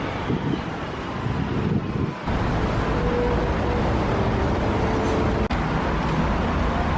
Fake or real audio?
real